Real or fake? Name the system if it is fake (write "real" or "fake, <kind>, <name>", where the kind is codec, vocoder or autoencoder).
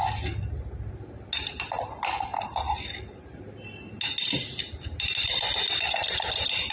real